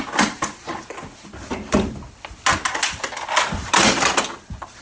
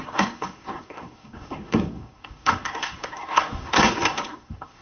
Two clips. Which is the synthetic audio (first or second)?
second